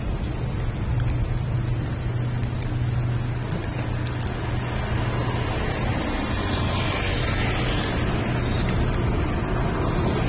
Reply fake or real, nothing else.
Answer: real